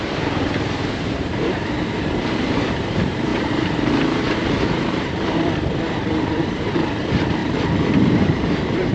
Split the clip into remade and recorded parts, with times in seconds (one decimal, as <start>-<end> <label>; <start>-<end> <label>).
0.0-7.4 remade; 7.4-8.1 recorded; 8.1-8.9 remade